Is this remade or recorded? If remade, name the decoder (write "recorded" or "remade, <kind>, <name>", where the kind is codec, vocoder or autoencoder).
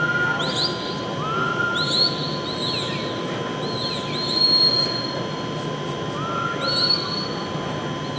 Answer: recorded